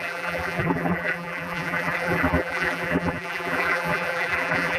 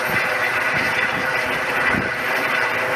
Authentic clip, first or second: second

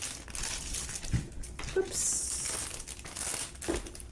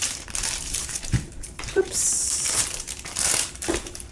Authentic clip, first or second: first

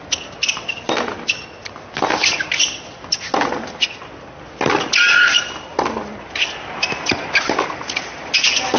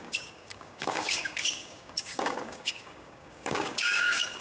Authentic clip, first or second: first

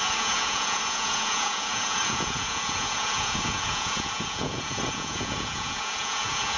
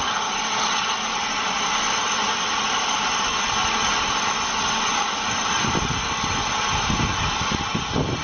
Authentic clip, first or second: second